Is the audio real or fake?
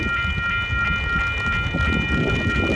real